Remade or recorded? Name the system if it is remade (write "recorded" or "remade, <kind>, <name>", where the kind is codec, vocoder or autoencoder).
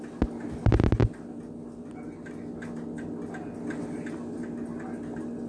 recorded